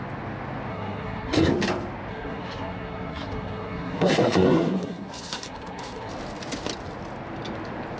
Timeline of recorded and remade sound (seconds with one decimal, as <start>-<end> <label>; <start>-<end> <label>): 0.0-0.7 recorded; 0.7-1.5 remade; 1.5-2.1 recorded; 2.1-6.1 remade; 6.1-8.0 recorded